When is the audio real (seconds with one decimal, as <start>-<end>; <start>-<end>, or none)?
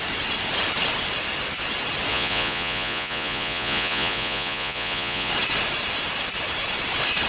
0.0-2.1; 5.3-7.3